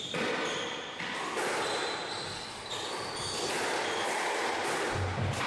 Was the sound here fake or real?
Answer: real